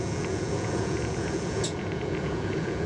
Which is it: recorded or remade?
remade